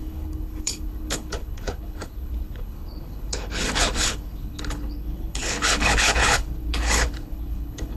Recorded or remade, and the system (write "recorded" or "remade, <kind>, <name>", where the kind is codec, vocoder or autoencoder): remade, codec, HILCodec